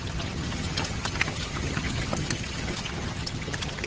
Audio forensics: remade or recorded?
remade